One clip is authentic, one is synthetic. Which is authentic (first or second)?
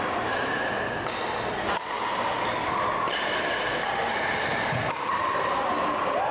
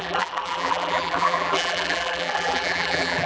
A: first